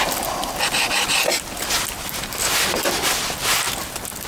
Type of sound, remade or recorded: recorded